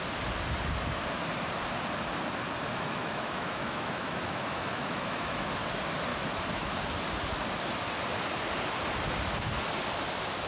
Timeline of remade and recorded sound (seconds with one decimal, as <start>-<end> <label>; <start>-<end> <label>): 0.0-2.7 recorded; 2.7-5.5 remade; 5.5-6.1 recorded; 6.1-6.7 remade; 6.7-10.5 recorded